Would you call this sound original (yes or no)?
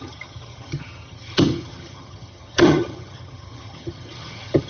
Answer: no